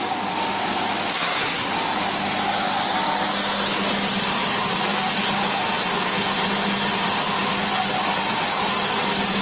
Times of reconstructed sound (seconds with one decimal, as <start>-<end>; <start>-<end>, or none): 1.1-1.7